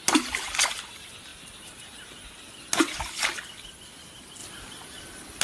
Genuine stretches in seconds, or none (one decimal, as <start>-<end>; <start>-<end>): 0.0-5.4